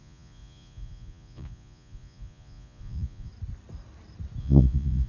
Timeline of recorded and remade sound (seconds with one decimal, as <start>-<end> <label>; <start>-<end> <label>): 0.0-3.3 remade; 3.3-4.4 recorded; 4.4-5.1 remade